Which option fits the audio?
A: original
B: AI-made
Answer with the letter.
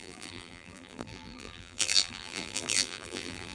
B